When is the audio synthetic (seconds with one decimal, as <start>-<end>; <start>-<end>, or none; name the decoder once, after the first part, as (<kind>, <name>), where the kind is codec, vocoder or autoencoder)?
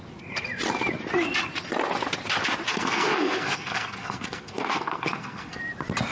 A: 2.7-5.6 (codec, SNAC)